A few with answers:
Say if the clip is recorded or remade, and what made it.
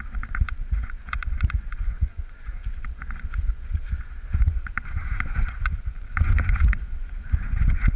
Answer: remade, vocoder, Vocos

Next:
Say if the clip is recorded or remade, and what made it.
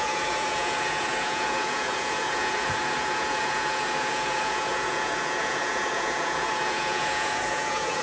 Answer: remade, vocoder, Vocos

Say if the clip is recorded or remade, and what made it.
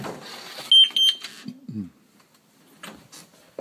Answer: recorded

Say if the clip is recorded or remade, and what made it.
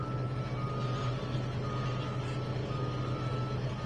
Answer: recorded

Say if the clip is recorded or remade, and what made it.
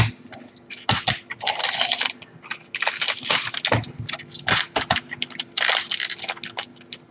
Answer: recorded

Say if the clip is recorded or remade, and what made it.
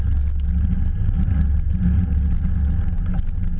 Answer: recorded